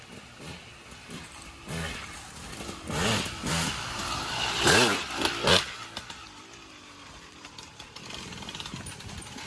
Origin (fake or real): real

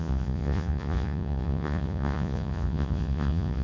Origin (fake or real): fake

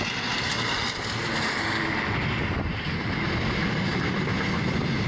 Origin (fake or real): real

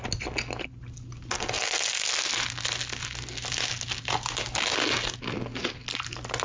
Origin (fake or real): real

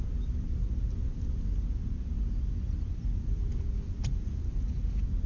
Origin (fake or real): real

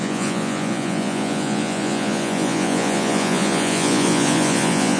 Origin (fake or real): fake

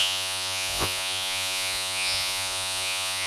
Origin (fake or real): fake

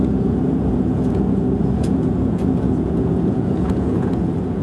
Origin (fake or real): fake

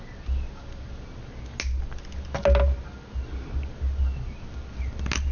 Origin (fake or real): real